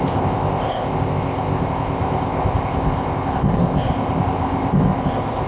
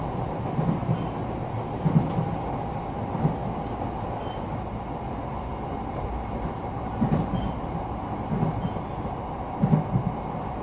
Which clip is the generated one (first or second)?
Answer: first